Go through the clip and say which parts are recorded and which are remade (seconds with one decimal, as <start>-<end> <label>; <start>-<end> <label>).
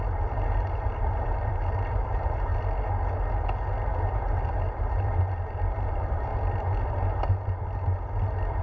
0.0-2.5 remade; 2.5-4.1 recorded; 4.1-6.3 remade; 6.3-8.6 recorded